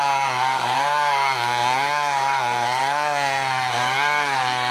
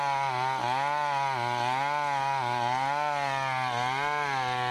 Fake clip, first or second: first